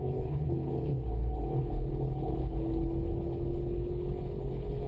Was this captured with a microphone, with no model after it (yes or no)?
no